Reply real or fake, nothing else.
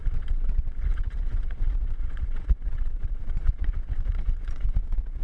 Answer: fake